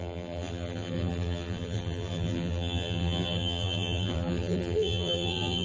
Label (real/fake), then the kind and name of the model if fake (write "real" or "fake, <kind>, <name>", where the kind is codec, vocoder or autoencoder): fake, vocoder, BigVGAN v2